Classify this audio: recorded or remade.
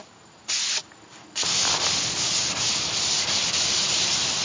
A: recorded